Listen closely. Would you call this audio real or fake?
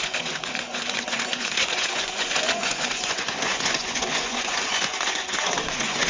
fake